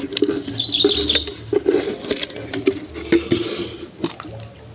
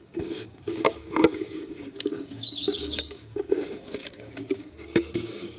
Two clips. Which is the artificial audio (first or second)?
second